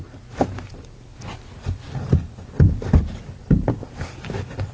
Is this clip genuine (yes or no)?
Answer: yes